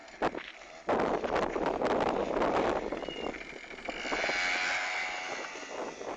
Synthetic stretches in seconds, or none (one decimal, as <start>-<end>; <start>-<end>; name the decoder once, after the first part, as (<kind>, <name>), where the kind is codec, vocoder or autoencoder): none